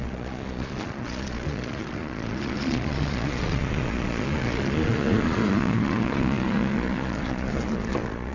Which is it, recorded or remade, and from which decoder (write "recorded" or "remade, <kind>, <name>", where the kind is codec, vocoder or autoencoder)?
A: remade, vocoder, Vocos